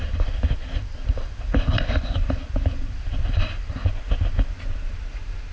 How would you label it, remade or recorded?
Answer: recorded